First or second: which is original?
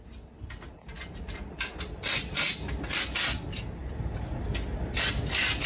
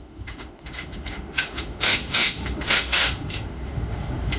first